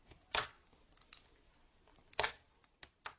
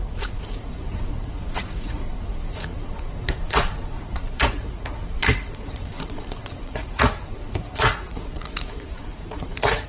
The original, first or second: first